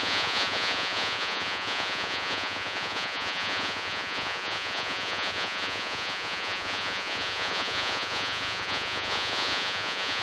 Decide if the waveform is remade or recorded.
remade